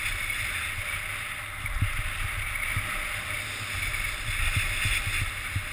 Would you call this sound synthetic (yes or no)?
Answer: no